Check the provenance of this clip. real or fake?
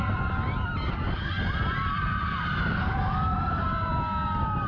real